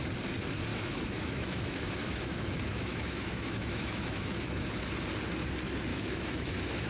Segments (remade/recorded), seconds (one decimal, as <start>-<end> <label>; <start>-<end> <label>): 0.0-0.7 recorded; 0.7-4.8 remade; 4.8-5.9 recorded; 5.9-6.9 remade